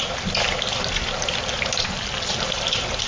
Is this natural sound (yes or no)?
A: yes